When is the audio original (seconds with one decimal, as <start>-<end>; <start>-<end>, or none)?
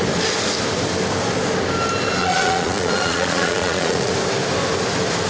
0.0-2.2; 4.1-5.3